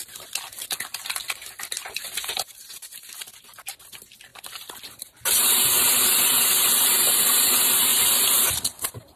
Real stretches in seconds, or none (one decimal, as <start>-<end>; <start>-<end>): 0.0-1.2; 1.7-7.9